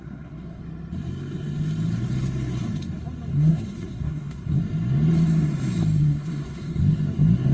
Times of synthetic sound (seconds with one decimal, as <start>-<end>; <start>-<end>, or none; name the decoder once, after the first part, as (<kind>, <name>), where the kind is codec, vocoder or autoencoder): 0.0-0.6 (codec, SNAC); 3.3-4.6; 6.0-6.8